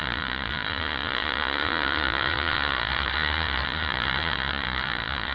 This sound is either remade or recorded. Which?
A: remade